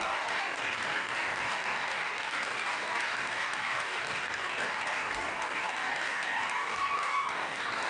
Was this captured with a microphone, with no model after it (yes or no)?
no